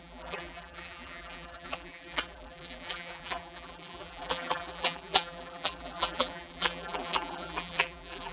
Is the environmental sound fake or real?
fake